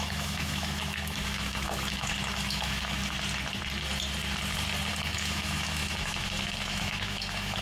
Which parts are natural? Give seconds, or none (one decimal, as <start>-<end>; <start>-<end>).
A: 3.0-4.9